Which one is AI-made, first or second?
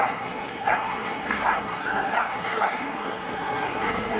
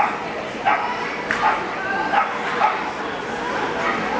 first